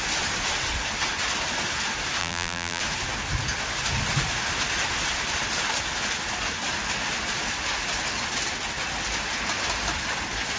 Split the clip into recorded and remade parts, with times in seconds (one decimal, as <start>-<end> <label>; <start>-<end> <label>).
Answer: 0.0-2.2 recorded; 2.2-2.8 remade; 2.8-10.6 recorded